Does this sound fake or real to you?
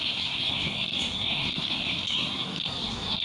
fake